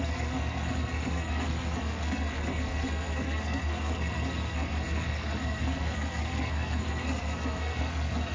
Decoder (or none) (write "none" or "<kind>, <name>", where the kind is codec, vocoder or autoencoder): codec, SNAC